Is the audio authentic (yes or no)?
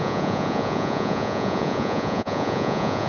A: no